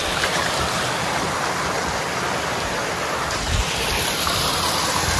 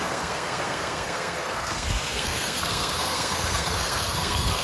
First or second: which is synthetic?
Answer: second